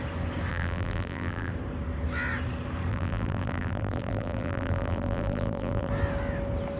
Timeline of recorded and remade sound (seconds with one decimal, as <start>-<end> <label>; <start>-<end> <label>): 0.0-0.5 recorded; 0.5-1.5 remade; 1.5-2.9 recorded; 2.9-5.9 remade; 5.9-6.8 recorded